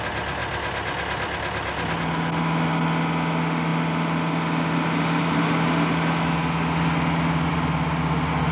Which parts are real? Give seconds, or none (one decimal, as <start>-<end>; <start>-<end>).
0.0-8.5